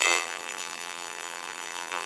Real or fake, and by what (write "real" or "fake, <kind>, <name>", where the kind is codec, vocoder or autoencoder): fake, vocoder, BigVGAN v2